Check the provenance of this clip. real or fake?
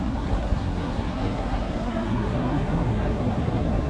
fake